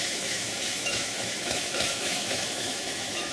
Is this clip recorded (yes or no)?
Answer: no